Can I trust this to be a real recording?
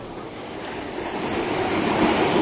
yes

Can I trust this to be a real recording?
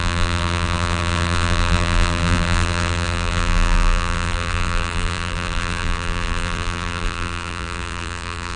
no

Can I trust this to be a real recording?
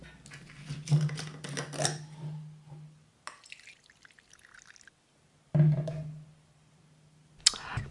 yes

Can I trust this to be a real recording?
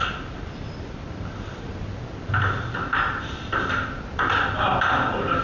yes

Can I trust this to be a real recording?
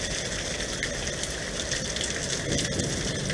yes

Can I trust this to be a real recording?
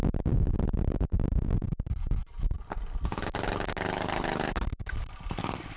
yes